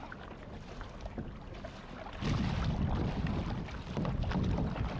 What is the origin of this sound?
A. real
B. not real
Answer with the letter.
A